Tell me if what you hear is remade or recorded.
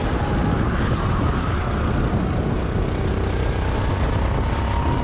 recorded